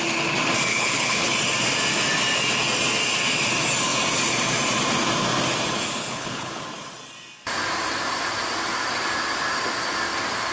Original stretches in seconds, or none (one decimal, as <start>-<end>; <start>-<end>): 0.0-0.7; 1.3-6.0; 6.6-10.5

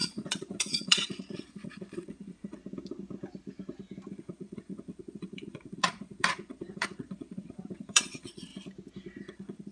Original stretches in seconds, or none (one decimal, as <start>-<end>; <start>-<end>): 2.6-4.1; 8.5-9.2

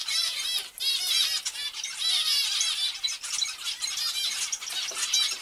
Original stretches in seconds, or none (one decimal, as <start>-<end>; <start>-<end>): 0.0-5.4